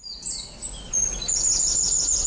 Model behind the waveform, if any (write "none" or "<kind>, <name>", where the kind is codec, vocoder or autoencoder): none